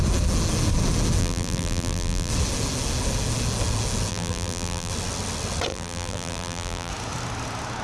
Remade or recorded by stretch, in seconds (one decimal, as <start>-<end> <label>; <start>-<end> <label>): 0.0-1.2 recorded; 1.2-2.3 remade; 2.3-4.1 recorded; 4.1-4.9 remade; 4.9-5.7 recorded; 5.7-6.9 remade; 6.9-7.8 recorded